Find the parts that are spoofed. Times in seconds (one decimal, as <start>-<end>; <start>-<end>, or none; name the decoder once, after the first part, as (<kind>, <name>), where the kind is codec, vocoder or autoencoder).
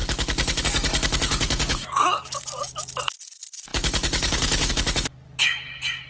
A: 0.0-6.1 (codec, DAC)